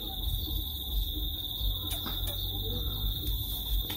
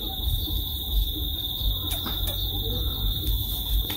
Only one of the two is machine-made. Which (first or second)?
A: second